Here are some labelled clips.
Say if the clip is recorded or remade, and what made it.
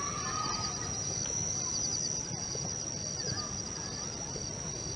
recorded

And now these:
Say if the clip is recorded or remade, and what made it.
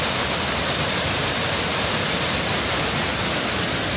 recorded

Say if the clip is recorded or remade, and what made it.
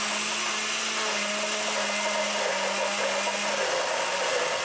recorded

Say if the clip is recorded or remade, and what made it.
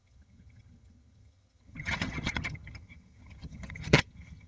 remade, vocoder, HiFi-GAN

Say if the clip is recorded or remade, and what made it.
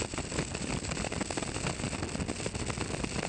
recorded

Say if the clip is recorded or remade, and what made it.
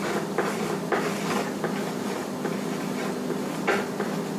recorded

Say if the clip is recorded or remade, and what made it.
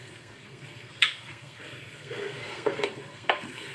remade, codec, SNAC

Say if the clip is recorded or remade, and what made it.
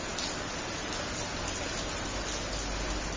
recorded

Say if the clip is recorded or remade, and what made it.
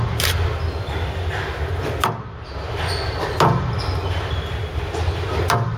recorded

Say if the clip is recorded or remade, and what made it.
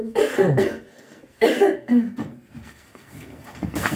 remade, codec, SNAC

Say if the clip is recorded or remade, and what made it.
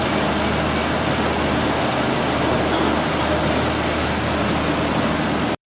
recorded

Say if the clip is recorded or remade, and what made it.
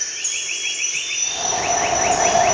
recorded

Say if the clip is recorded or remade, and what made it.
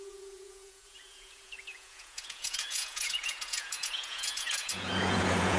remade, vocoder, Vocos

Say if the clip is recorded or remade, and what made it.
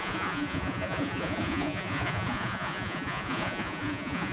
remade, vocoder, Vocos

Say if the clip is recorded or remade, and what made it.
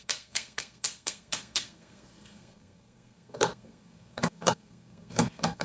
remade, codec, SNAC